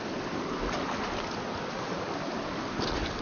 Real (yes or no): yes